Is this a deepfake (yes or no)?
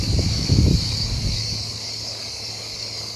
yes